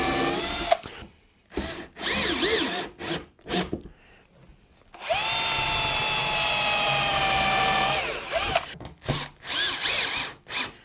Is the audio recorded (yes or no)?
yes